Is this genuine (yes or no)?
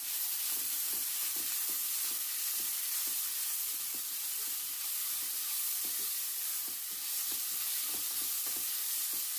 yes